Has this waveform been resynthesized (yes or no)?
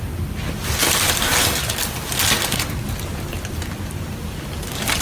no